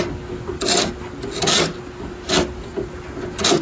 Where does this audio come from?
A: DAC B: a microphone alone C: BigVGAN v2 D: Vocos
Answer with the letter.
B